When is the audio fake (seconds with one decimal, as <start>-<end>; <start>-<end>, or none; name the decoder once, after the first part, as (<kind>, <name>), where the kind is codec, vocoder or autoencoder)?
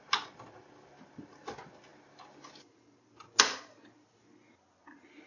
none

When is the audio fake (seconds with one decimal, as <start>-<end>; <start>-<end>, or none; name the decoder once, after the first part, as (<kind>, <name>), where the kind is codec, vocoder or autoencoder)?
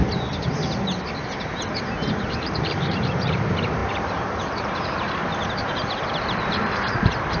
2.1-7.4 (vocoder, BigVGAN v2)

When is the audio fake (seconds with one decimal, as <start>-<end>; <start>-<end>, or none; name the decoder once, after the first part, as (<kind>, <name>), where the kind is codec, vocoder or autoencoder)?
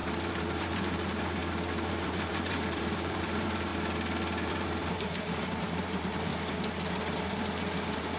0.0-1.4 (vocoder, BigVGAN v2); 1.9-3.7; 4.5-6.3; 7.2-8.2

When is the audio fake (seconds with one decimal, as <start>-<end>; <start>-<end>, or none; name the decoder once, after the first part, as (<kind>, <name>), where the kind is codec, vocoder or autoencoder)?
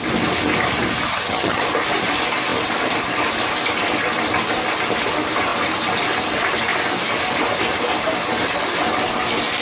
1.1-1.6 (vocoder, HiFi-GAN)